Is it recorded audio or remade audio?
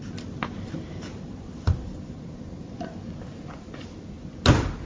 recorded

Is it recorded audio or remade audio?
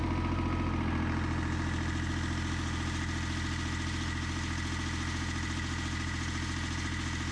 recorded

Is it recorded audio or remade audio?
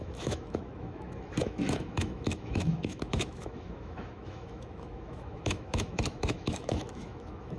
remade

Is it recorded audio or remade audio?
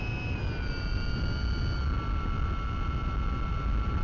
recorded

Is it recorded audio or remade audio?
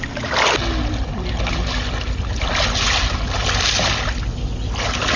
recorded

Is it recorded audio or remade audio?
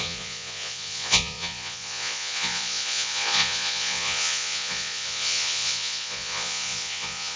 remade